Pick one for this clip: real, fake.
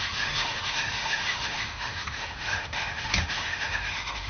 fake